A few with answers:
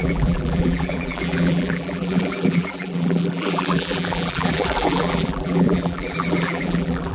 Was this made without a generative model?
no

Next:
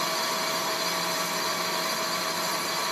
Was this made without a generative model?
yes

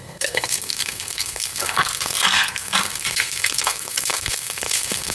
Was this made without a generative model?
no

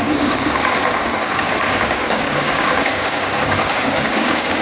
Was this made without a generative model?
no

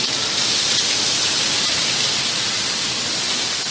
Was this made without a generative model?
yes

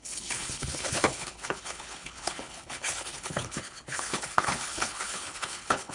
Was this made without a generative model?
no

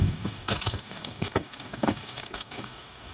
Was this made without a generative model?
no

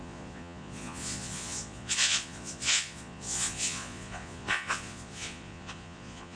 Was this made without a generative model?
no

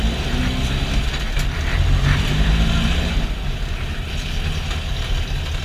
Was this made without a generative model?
yes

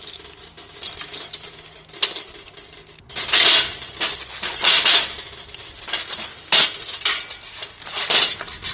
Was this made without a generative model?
yes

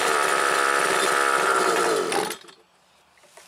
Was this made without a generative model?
yes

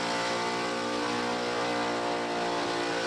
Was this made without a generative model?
yes